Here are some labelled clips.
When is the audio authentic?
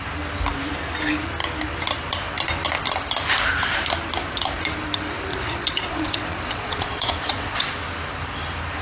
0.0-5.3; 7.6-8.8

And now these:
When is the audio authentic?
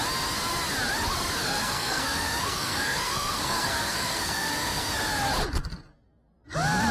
0.0-1.4; 4.9-6.9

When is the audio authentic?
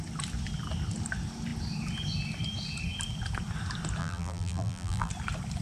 0.0-4.0; 5.1-5.6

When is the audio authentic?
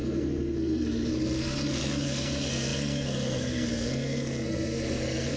none